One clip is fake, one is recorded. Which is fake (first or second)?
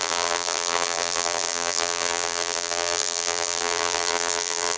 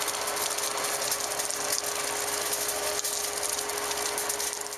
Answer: first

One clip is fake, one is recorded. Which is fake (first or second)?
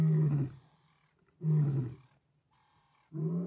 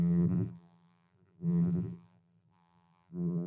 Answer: second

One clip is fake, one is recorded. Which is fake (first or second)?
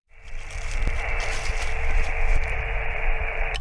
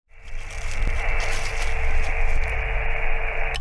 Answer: first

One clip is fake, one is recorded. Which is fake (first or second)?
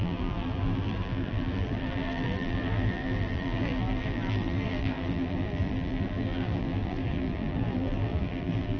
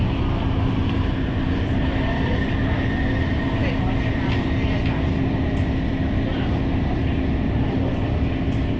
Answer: first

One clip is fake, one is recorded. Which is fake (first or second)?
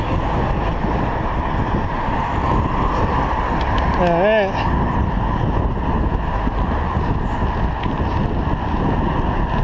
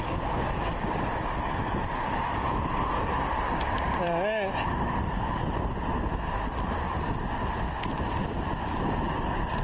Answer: second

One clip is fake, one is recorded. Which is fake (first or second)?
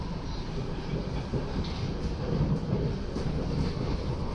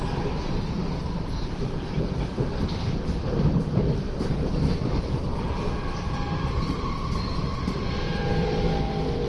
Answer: second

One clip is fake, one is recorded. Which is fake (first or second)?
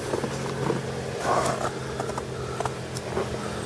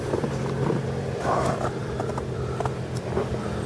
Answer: second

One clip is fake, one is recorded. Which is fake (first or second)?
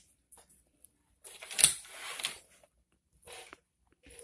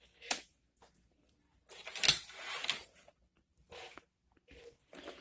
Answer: first